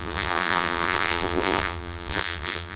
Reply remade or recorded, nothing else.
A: remade